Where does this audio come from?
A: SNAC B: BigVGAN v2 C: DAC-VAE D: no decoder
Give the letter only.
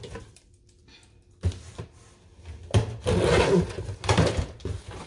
D